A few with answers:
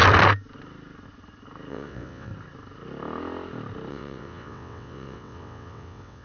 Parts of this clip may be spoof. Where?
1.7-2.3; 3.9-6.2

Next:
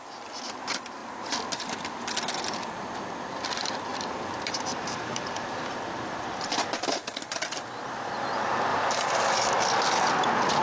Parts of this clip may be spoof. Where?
3.9-7.1; 8.7-9.6

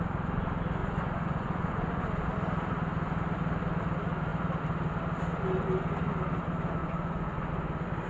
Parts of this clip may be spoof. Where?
0.8-2.0; 6.8-7.5

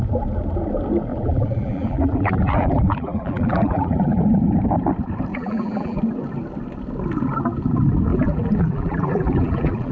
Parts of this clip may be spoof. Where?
1.1-4.2; 5.3-6.0; 8.1-9.9

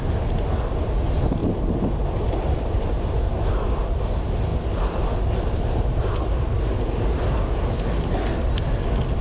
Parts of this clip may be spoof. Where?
1.4-3.0; 4.5-7.2